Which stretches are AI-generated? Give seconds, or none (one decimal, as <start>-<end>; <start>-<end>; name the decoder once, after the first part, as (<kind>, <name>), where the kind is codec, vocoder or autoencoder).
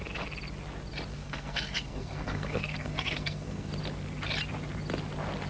1.1-3.7 (codec, SNAC)